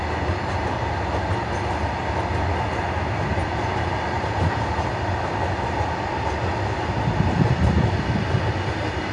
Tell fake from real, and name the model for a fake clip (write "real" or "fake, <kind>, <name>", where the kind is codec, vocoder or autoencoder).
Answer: real